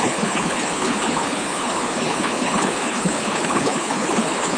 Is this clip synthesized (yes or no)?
yes